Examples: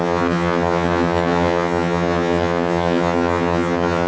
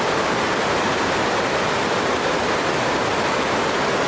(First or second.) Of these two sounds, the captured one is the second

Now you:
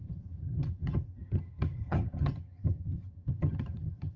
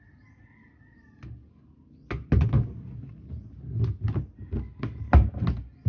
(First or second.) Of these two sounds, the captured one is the second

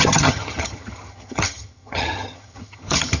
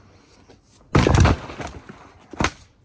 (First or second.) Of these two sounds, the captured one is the second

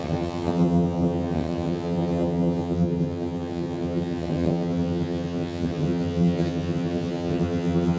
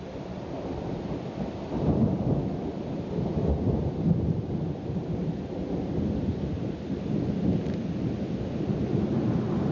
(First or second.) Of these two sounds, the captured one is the second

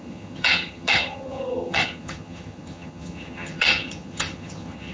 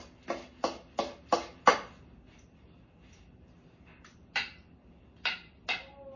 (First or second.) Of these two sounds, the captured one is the second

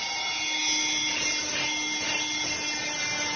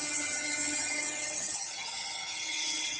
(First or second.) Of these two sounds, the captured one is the first